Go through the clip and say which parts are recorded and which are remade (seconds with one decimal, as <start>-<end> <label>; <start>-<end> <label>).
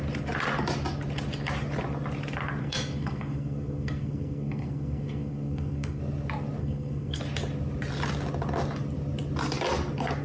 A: 0.0-2.6 recorded; 2.6-6.0 remade; 6.0-6.6 recorded; 6.6-7.2 remade; 7.2-10.2 recorded